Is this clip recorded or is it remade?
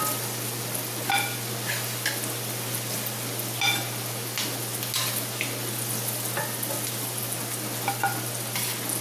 recorded